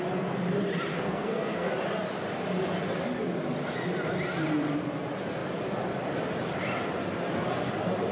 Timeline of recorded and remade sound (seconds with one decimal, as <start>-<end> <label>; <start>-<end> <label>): 0.0-0.9 recorded; 0.9-1.7 remade; 1.7-8.1 recorded